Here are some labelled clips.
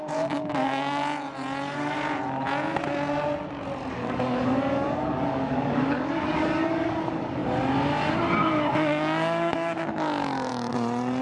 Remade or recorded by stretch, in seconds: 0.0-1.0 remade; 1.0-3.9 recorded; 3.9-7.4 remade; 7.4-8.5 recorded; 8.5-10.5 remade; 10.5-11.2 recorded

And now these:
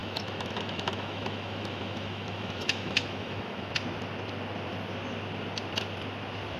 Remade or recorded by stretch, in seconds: 0.0-3.7 remade; 3.7-6.6 recorded